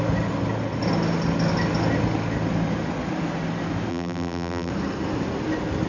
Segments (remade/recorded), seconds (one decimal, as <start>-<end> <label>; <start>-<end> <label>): 0.0-3.9 recorded; 3.9-4.7 remade; 4.7-5.9 recorded